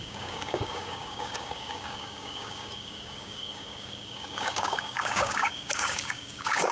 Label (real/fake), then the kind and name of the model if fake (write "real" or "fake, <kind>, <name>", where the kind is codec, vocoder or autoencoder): fake, codec, DAC